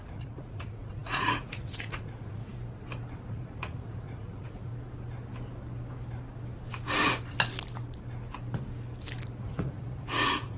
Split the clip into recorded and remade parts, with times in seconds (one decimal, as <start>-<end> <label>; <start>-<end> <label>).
0.0-2.5 remade; 2.5-3.3 recorded; 3.3-4.7 remade; 4.7-9.4 recorded; 9.4-10.6 remade